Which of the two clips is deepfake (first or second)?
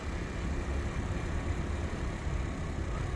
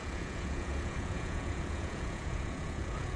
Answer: second